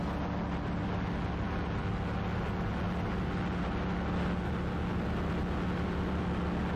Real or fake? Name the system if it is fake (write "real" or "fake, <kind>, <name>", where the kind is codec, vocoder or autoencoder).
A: real